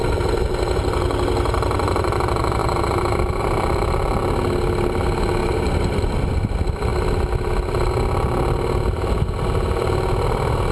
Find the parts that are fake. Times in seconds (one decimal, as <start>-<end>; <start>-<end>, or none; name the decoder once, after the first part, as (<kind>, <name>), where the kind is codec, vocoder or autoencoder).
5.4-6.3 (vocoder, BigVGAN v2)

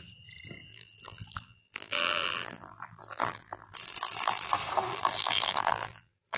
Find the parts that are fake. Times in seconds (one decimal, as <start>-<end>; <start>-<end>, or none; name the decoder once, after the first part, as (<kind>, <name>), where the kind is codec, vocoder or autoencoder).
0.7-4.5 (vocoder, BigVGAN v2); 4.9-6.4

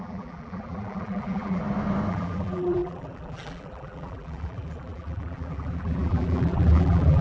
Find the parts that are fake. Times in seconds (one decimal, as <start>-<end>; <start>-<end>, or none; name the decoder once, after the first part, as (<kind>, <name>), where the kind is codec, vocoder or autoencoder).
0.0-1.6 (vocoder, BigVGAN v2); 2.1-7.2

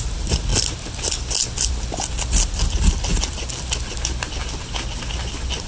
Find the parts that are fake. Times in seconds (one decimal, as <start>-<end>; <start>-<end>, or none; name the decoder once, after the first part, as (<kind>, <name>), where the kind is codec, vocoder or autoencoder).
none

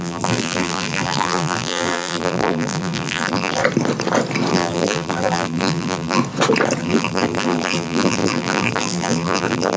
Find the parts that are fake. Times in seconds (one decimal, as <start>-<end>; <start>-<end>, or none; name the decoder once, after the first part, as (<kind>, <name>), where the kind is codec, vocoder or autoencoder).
0.0-3.6 (vocoder, BigVGAN v2); 4.5-6.2; 6.8-9.8

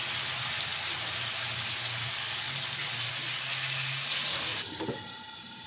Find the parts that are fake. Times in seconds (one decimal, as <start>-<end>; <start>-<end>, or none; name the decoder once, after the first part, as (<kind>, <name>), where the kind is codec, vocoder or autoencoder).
4.5-5.7 (vocoder, BigVGAN v2)

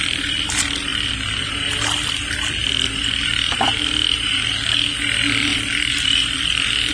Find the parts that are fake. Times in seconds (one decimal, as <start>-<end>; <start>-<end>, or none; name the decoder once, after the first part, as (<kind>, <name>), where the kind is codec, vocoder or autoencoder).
0.9-1.4 (vocoder, BigVGAN v2); 2.6-3.7; 5.5-6.9